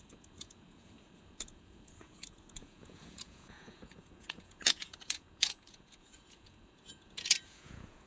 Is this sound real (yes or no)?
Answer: no